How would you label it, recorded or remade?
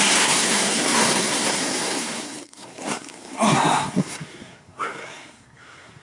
remade